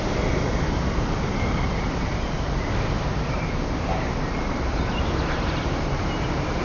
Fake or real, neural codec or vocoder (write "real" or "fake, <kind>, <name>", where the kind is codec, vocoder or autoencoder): fake, vocoder, BigVGAN v2